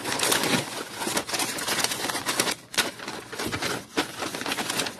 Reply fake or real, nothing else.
fake